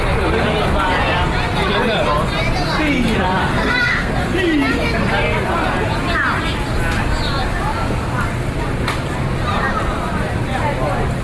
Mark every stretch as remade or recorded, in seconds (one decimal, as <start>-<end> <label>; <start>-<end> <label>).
0.0-3.4 recorded; 3.4-4.1 remade; 4.1-11.2 recorded